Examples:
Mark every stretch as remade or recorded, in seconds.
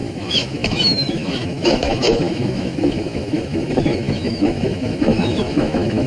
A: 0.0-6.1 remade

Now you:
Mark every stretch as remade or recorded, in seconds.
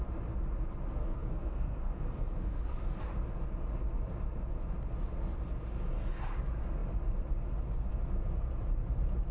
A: 0.0-1.0 recorded; 1.0-3.0 remade; 3.0-9.3 recorded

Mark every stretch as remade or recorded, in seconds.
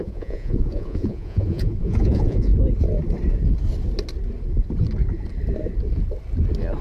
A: 0.0-2.5 remade; 2.5-6.8 recorded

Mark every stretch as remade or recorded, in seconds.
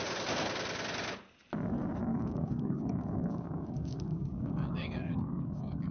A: 0.0-2.1 recorded; 2.1-5.9 remade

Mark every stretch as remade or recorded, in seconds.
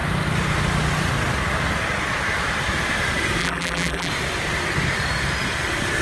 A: 0.0-3.4 recorded; 3.4-4.1 remade; 4.1-6.0 recorded